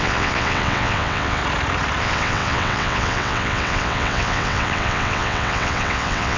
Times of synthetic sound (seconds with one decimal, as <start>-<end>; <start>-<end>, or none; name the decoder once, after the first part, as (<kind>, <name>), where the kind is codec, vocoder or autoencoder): 0.0-1.4 (vocoder, WaveNeXt); 2.0-6.4